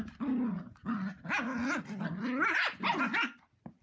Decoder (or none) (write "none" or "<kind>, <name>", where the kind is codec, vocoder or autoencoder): none